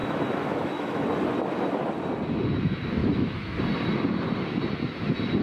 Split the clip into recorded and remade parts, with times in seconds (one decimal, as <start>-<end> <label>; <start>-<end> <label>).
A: 0.0-1.0 remade; 1.0-3.0 recorded; 3.0-3.6 remade; 3.6-5.4 recorded